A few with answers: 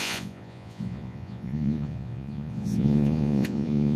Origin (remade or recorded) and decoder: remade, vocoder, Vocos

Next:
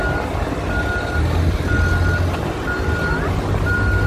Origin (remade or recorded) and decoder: recorded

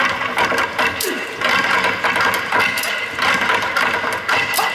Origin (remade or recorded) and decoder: recorded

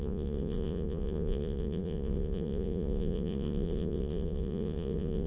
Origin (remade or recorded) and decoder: remade, vocoder, Vocos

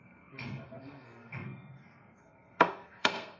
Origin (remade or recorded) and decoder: remade, codec, SNAC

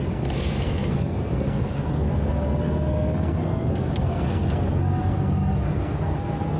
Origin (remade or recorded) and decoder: remade, codec, SNAC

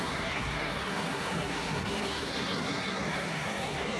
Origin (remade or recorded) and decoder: remade, codec, SNAC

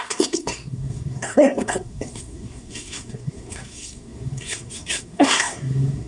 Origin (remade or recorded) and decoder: remade, codec, SNAC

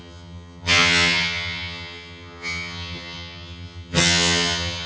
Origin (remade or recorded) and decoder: remade, vocoder, HiFi-GAN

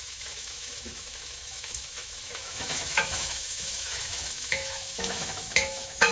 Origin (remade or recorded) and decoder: remade, autoencoder, DAC-VAE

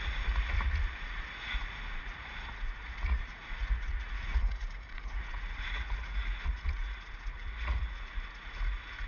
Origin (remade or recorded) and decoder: remade, vocoder, Vocos